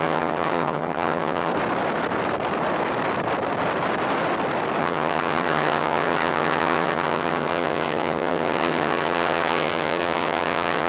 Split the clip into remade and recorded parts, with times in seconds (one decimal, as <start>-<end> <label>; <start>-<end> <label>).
0.0-1.5 remade; 1.5-4.8 recorded; 4.8-10.9 remade